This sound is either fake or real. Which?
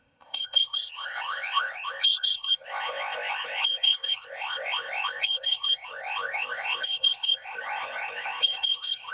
fake